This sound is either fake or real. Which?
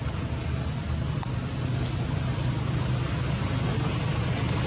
real